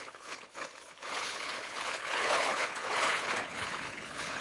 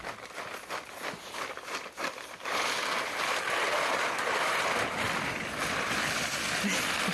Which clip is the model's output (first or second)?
first